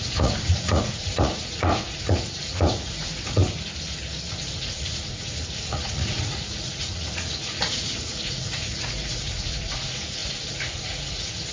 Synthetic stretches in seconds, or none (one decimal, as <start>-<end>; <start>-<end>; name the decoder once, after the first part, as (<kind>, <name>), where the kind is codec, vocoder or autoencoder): 0.0-3.4 (vocoder, Vocos); 4.3-11.5